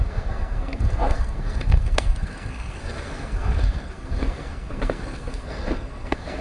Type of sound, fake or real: fake